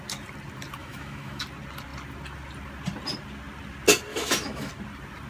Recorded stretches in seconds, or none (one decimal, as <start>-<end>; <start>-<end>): 0.0-0.8; 1.4-4.1; 4.7-5.3